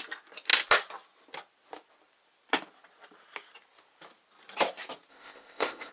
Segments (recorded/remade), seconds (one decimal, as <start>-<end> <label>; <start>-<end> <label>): 0.0-5.1 recorded; 5.1-5.9 remade